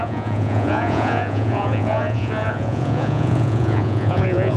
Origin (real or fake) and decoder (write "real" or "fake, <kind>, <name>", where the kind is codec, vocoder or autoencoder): fake, vocoder, Vocos